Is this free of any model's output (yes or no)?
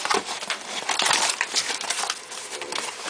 no